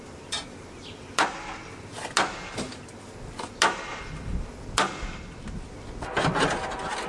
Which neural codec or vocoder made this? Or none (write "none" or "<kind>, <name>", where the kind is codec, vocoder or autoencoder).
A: none